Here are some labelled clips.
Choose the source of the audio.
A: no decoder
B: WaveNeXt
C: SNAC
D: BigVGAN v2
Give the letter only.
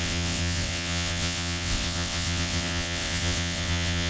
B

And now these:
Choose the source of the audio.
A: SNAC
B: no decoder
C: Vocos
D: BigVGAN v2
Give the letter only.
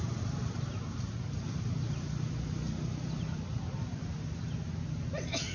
B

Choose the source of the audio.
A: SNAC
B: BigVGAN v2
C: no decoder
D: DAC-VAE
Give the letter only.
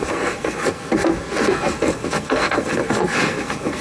A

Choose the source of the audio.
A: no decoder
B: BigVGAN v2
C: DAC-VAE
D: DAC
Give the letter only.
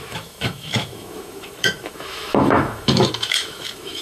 C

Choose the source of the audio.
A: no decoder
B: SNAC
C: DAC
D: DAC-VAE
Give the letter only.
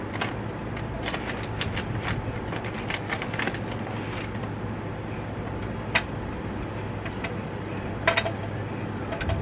A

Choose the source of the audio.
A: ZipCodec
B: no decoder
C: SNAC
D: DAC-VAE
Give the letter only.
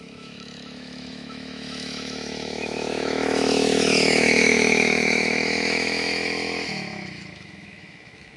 D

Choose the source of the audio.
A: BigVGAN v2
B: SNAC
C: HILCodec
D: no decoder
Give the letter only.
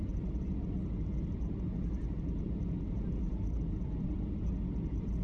A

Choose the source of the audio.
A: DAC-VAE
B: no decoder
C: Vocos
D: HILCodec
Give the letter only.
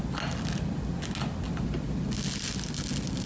B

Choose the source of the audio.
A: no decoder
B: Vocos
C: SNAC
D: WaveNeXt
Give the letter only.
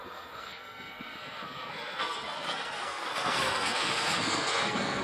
C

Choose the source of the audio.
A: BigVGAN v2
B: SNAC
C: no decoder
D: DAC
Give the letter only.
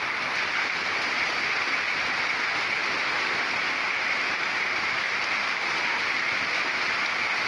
C